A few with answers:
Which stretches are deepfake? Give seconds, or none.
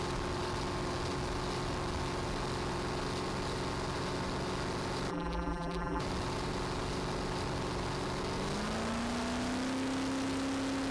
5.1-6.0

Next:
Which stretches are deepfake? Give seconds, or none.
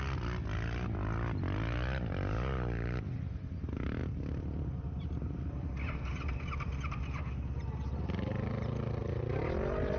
none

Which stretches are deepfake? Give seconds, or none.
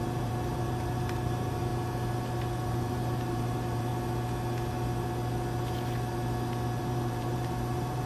0.0-1.7; 2.6-3.9; 6.8-8.1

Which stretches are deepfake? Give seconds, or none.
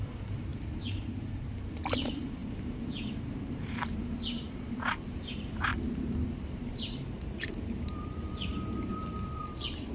0.0-5.7; 6.4-8.5